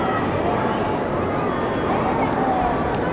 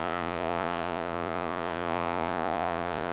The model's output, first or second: second